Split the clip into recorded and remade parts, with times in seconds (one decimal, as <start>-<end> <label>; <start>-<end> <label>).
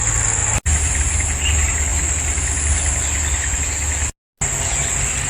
0.0-5.3 recorded